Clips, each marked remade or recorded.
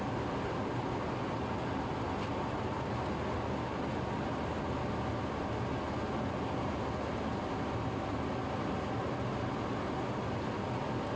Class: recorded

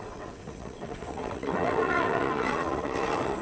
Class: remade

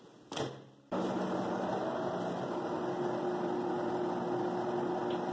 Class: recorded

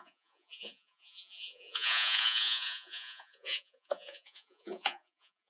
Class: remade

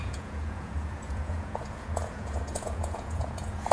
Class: remade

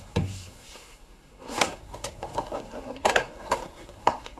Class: remade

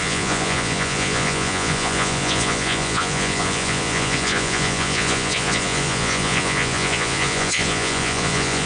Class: remade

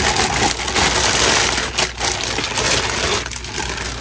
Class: recorded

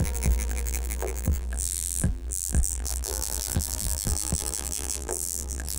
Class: remade